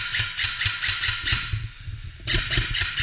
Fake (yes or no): no